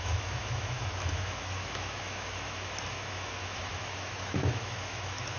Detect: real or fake fake